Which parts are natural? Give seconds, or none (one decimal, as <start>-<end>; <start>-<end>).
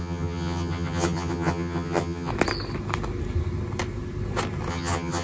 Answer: 2.3-4.7